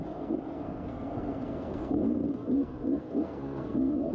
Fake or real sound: fake